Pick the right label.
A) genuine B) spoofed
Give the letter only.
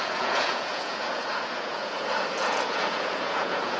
B